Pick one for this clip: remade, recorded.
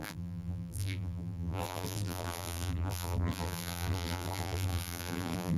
remade